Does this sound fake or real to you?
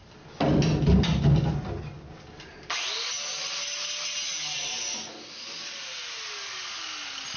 real